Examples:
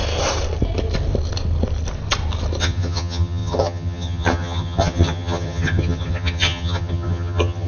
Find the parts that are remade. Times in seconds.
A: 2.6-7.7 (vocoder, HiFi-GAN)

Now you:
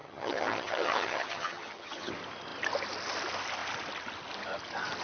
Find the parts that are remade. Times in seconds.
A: 0.0-2.1 (vocoder, HiFi-GAN)

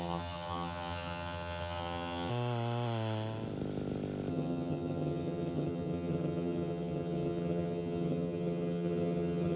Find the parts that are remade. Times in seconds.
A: 0.0-2.3 (vocoder, HiFi-GAN); 4.3-9.6